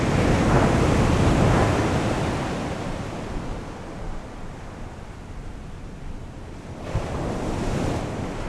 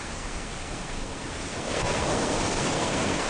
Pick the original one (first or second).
first